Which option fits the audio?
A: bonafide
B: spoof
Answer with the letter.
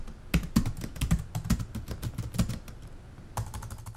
A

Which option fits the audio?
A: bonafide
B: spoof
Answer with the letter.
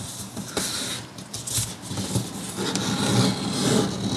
A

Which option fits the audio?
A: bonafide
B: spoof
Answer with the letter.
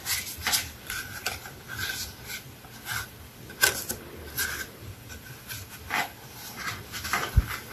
A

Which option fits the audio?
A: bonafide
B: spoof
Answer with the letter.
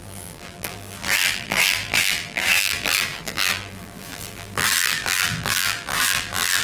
B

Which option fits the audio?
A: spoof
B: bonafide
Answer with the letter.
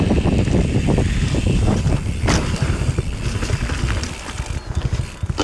A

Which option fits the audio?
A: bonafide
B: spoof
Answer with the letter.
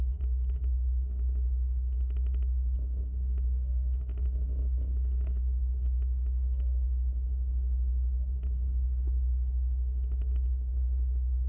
A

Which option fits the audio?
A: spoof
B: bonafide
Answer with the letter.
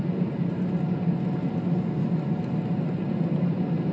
B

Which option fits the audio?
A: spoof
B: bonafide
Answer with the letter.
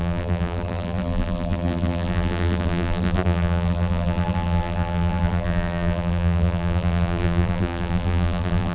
A